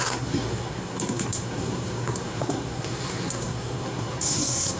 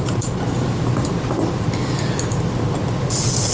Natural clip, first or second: second